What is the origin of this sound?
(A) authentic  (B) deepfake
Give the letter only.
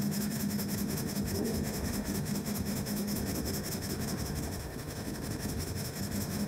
B